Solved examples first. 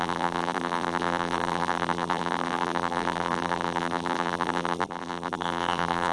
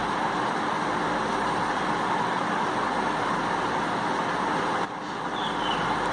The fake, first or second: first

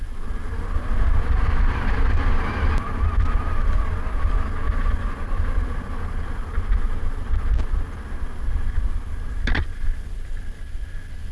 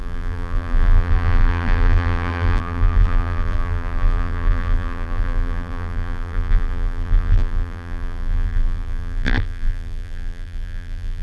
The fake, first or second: second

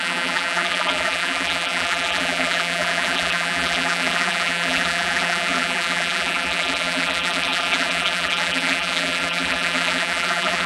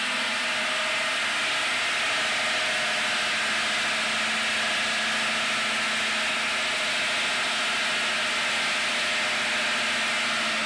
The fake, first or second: first